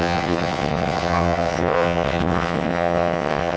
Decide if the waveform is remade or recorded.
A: remade